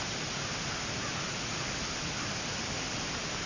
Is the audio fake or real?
real